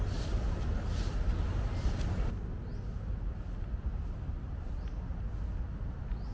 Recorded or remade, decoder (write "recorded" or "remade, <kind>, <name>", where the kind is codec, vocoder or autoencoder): recorded